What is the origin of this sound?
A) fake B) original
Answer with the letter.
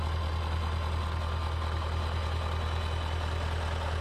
B